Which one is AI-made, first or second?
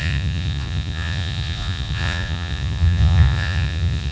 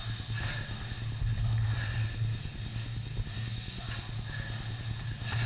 first